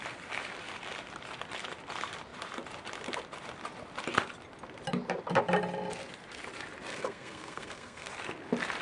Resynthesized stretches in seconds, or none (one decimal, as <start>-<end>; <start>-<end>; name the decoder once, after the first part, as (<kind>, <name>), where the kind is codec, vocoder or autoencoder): 6.9-8.1 (codec, SNAC)

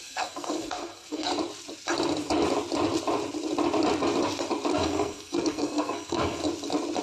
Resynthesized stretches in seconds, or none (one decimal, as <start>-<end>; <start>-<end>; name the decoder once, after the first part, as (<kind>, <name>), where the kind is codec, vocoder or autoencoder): 0.0-1.3 (codec, SNAC); 4.7-6.4

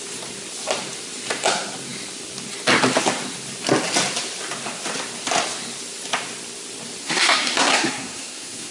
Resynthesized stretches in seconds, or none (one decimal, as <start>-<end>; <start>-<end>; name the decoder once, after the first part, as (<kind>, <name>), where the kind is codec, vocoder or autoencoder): 7.0-8.7 (codec, SNAC)

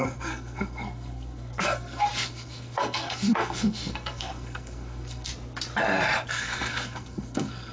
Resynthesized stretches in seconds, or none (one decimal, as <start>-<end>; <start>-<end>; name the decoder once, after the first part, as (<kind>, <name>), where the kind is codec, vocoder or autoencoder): 0.0-5.3 (codec, SNAC); 6.3-7.7

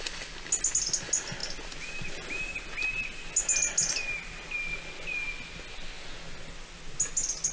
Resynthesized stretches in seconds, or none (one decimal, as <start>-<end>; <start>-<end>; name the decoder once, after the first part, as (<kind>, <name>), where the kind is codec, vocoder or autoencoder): none

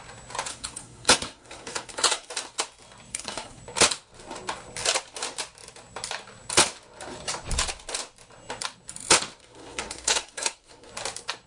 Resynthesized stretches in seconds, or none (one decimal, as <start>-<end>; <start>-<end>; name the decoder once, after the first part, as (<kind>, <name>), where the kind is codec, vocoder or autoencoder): 0.5-2.3 (codec, SNAC); 3.1-3.6; 9.4-10.9

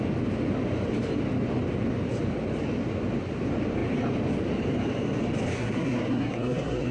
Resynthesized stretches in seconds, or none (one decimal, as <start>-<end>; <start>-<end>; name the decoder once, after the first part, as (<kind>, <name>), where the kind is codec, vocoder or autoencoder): 5.5-6.9 (codec, SNAC)